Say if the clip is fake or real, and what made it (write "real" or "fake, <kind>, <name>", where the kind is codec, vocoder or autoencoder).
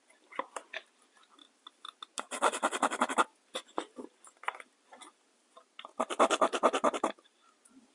real